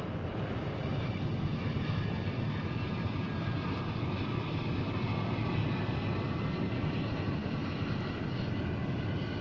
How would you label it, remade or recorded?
recorded